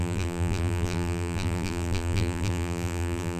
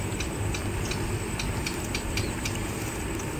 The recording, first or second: second